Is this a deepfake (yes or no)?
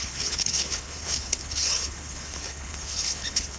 yes